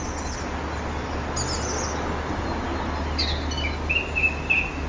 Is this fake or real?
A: real